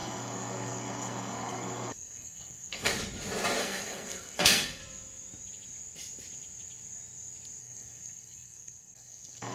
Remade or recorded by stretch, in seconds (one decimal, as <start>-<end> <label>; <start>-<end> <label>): 0.0-2.9 remade; 2.9-3.6 recorded; 3.6-4.8 remade; 4.8-7.6 recorded; 7.6-9.5 remade